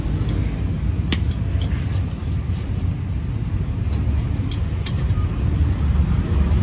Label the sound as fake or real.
real